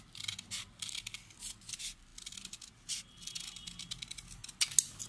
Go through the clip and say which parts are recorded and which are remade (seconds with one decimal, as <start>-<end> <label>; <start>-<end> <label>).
0.0-5.1 recorded